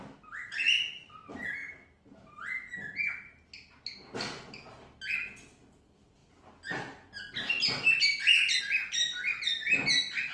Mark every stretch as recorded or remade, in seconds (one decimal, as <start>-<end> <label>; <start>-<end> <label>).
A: 0.0-10.3 recorded